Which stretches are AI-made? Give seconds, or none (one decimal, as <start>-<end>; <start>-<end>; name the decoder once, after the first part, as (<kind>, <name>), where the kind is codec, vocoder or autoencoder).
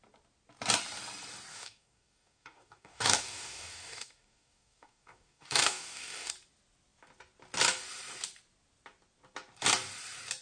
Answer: 1.5-6.3 (codec, DAC)